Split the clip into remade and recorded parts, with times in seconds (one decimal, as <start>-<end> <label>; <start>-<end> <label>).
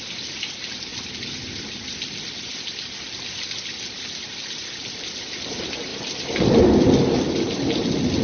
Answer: 0.0-8.2 recorded